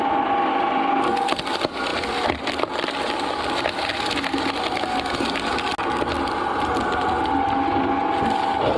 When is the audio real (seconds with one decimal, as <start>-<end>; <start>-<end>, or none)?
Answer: 0.0-8.8